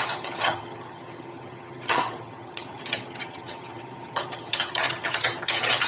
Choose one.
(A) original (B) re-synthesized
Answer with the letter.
B